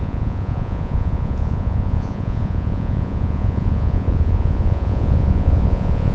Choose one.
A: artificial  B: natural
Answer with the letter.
A